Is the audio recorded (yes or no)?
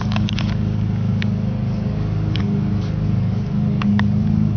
no